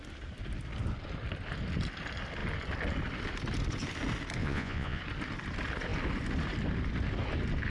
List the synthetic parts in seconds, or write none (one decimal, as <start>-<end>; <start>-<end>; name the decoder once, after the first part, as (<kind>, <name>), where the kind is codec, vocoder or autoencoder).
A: 4.4-5.0 (vocoder, Vocos)